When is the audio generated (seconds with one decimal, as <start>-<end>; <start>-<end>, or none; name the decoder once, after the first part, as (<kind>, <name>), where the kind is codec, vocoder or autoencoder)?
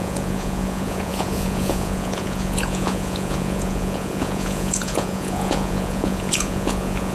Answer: 0.0-7.1 (vocoder, Vocos)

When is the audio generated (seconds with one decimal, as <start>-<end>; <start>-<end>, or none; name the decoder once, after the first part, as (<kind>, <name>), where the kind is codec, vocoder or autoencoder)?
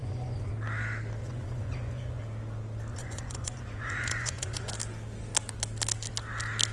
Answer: 0.0-0.5 (vocoder, Vocos); 1.2-2.2; 2.9-4.7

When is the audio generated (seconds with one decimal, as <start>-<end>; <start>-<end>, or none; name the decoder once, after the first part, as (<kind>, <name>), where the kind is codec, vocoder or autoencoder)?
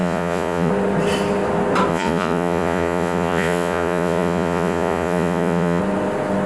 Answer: 0.0-0.7 (vocoder, Vocos); 1.9-5.8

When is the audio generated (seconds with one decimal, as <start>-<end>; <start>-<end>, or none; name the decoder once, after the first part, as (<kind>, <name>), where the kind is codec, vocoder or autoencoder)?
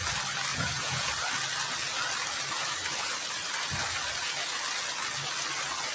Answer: 0.5-1.1 (vocoder, Vocos)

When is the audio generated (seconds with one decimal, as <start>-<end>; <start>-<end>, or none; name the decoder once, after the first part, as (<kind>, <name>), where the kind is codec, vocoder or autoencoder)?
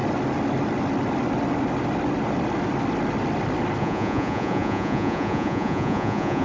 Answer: 3.8-6.4 (vocoder, Vocos)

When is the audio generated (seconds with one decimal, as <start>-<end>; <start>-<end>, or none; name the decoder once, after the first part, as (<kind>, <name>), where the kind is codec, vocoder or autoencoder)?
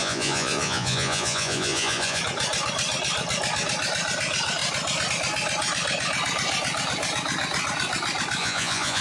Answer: 0.0-2.2 (vocoder, Vocos); 8.4-9.0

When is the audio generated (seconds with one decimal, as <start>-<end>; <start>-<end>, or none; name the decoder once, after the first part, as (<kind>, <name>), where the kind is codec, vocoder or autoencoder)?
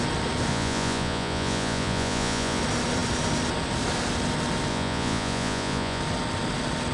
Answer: 0.5-2.6 (vocoder, Vocos); 4.7-6.0